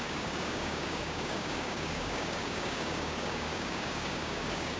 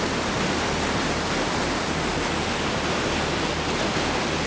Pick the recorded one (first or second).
second